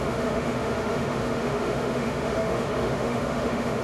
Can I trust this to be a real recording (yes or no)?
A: no